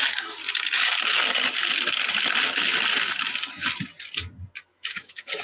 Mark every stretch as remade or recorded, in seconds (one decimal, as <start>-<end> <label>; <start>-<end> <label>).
0.0-4.7 recorded; 4.7-5.4 remade